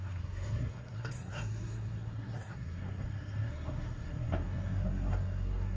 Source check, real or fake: fake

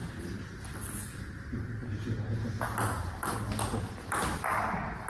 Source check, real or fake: real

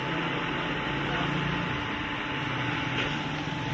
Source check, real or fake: real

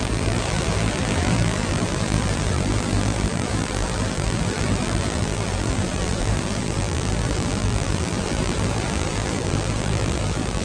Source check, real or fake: fake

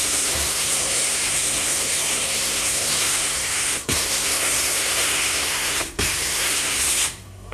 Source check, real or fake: fake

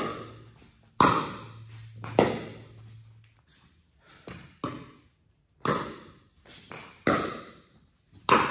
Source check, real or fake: real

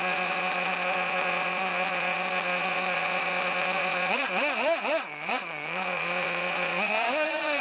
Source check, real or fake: fake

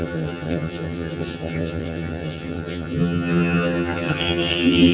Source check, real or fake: fake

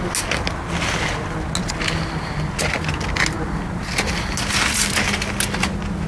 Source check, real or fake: real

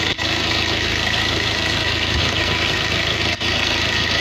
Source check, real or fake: fake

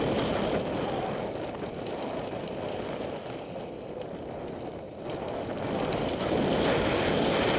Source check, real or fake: real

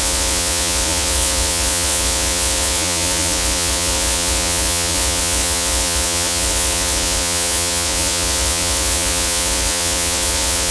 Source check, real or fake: fake